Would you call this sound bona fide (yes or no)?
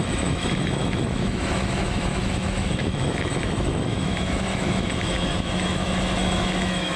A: no